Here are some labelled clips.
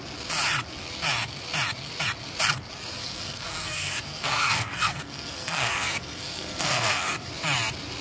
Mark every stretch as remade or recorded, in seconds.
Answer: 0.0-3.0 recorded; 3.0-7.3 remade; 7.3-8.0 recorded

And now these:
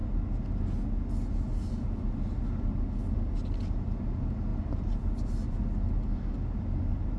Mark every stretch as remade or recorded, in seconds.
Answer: 0.0-4.5 recorded; 4.5-5.6 remade; 5.6-7.2 recorded

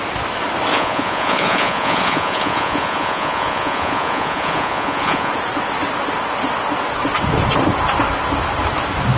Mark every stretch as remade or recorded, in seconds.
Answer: 0.0-0.7 recorded; 0.7-5.3 remade; 5.3-9.2 recorded

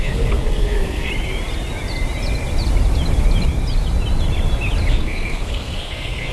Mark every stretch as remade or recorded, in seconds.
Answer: 0.0-1.1 remade; 1.1-4.9 recorded; 4.9-6.3 remade